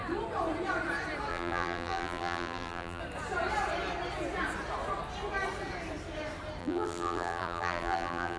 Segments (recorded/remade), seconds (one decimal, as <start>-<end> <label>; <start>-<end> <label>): 0.0-1.3 recorded; 1.3-3.0 remade; 3.0-6.6 recorded; 6.6-8.4 remade